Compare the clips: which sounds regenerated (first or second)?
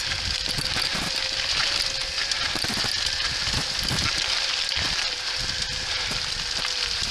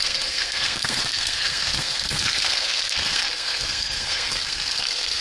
second